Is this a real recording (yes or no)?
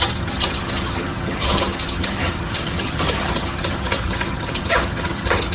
no